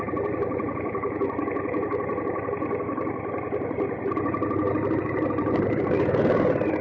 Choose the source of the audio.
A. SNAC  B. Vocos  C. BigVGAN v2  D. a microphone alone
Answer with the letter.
C